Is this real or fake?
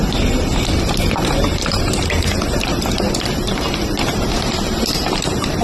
fake